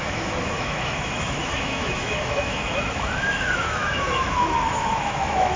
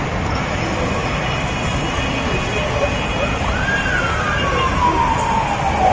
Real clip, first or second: second